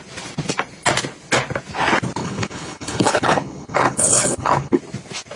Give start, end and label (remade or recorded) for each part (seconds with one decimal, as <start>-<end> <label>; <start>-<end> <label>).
0.0-2.2 recorded; 2.2-4.8 remade; 4.8-5.4 recorded